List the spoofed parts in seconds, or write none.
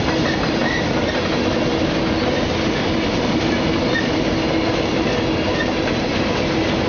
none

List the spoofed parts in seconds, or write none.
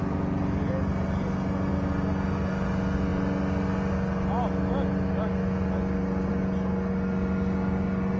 none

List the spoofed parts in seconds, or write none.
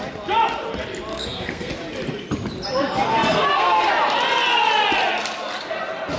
1.1-1.7 (codec, SNAC); 3.1-3.9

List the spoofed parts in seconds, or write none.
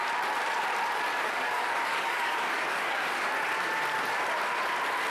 1.1-3.3 (codec, DAC)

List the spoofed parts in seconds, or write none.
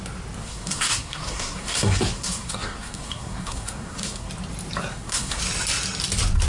0.4-4.3 (codec, SNAC); 4.9-5.4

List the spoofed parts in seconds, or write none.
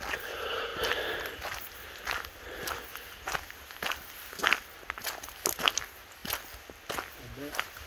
none